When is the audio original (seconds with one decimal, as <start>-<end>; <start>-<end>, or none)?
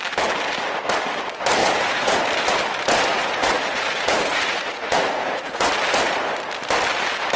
0.0-1.6; 2.2-3.1; 5.7-7.4